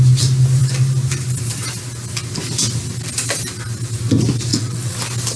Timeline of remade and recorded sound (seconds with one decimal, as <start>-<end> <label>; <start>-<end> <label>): 0.0-4.5 recorded; 4.5-5.0 remade; 5.0-5.4 recorded